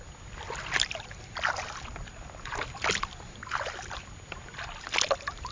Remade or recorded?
recorded